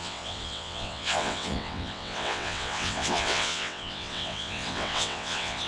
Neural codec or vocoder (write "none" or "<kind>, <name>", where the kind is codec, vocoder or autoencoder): vocoder, WaveNeXt